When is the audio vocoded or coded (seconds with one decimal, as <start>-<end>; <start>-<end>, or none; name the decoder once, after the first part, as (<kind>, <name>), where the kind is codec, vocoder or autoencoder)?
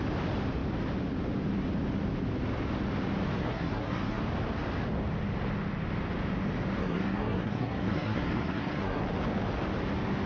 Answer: 3.4-4.2 (codec, SNAC); 6.8-9.0